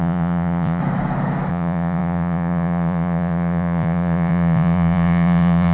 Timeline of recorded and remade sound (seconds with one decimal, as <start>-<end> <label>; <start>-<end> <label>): 0.0-0.8 remade; 0.8-1.5 recorded; 1.5-5.7 remade